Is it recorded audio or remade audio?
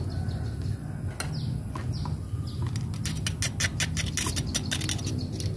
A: recorded